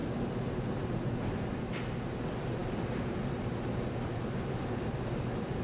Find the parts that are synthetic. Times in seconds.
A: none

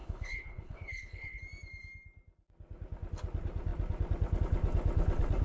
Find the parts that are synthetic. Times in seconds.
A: 0.0-1.4

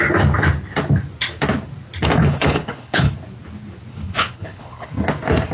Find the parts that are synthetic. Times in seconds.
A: 2.2-3.1; 3.9-4.9

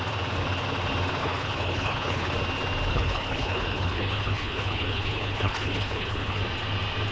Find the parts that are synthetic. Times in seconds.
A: 1.2-2.3; 2.9-6.4

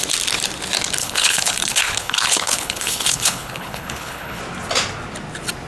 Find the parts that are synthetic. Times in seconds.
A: 1.0-4.4

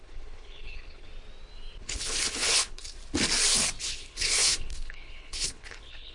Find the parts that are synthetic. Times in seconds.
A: 0.0-1.1; 1.8-3.0; 3.8-6.1

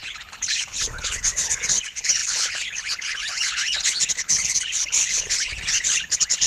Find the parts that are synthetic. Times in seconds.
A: 0.0-6.5